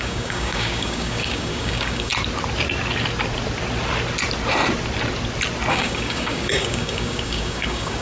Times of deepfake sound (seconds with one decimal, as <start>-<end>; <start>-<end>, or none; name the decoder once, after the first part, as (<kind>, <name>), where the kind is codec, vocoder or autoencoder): 0.0-2.1 (codec, DAC); 5.7-8.0